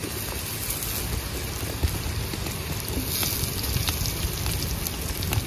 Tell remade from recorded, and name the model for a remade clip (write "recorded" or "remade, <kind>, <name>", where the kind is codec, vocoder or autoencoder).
recorded